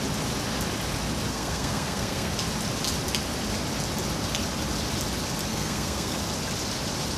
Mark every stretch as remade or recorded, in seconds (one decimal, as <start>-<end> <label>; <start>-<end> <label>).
0.0-1.3 recorded; 1.3-2.3 remade; 2.3-5.5 recorded; 5.5-6.2 remade; 6.2-7.2 recorded